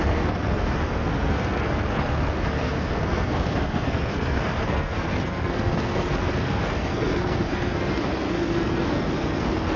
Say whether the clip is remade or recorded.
remade